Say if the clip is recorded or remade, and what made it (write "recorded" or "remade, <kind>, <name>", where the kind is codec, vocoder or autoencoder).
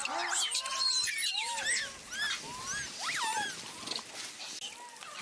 recorded